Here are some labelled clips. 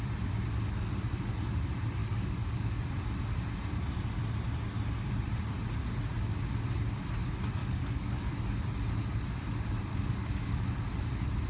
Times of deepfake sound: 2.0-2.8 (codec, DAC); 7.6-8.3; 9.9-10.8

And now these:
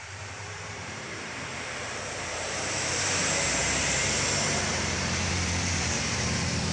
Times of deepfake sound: 0.0-6.7 (vocoder, BigVGAN v2)

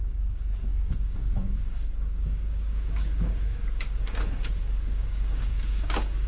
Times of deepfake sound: 0.0-6.3 (codec, DAC)

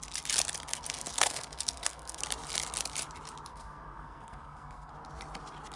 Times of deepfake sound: 0.7-2.2 (codec, SNAC); 3.5-4.9